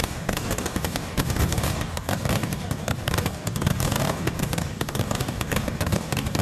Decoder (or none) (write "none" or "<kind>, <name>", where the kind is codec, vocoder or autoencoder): codec, DAC